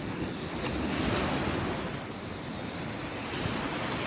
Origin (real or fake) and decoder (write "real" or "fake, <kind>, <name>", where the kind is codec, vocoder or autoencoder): real